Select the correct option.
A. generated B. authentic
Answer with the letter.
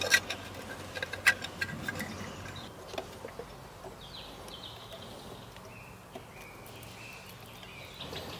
B